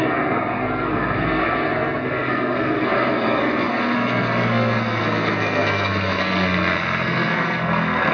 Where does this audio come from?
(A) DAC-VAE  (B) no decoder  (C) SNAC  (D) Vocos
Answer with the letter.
C